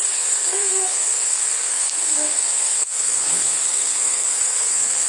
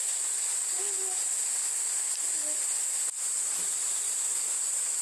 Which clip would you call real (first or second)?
second